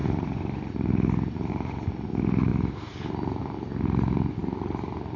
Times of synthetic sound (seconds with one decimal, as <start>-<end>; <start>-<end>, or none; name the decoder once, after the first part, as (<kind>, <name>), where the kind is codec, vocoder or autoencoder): none